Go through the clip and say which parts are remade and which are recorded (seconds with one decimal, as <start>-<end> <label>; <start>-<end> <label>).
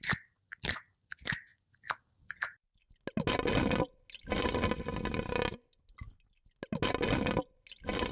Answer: 0.0-8.1 recorded